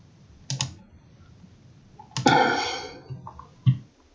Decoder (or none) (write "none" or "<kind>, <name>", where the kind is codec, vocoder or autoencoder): none